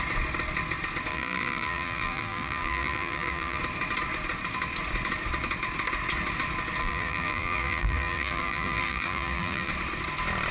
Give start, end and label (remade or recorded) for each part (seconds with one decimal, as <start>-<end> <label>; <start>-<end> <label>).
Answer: 0.0-1.1 recorded; 1.1-3.6 remade; 3.6-6.8 recorded; 6.8-9.7 remade; 9.7-10.5 recorded